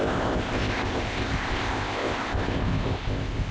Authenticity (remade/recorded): remade